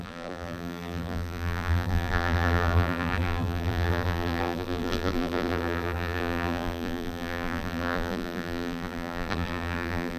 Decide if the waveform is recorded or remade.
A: remade